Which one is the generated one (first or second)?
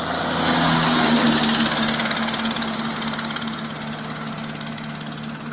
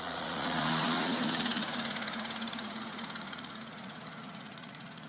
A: second